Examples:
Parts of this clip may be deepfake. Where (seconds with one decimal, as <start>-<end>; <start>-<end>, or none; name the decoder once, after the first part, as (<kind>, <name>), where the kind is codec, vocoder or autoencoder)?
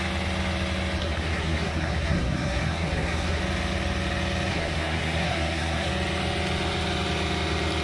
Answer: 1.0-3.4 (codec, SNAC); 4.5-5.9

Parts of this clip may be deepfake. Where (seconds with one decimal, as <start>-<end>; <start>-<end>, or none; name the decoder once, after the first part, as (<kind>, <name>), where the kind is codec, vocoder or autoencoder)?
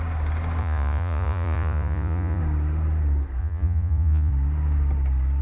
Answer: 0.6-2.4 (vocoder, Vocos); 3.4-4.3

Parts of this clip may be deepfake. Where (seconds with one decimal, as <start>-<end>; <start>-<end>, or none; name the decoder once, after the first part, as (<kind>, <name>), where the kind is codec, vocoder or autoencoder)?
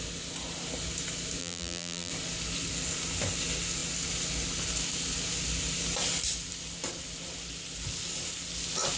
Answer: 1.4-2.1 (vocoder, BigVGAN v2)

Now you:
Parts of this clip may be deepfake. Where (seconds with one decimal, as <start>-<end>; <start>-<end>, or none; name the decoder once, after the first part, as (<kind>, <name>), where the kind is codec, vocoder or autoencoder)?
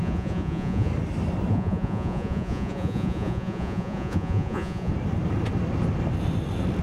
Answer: 0.0-0.9 (vocoder, Vocos); 1.5-4.9